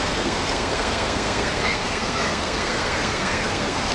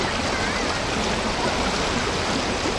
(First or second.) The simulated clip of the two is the first